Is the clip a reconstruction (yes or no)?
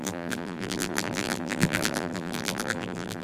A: yes